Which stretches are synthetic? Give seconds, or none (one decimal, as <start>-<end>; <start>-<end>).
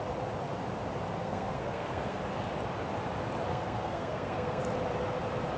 1.2-2.2; 3.5-4.6